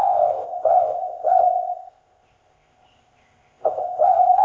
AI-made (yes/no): yes